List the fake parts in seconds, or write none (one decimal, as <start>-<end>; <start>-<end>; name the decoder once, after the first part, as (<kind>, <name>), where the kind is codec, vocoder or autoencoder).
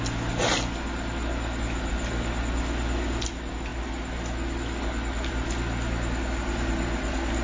none